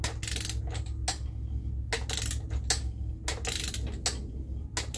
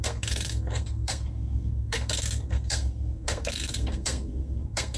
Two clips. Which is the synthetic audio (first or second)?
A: second